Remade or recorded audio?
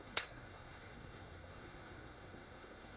remade